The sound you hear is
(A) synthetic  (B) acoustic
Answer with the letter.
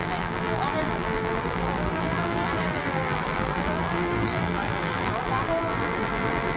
A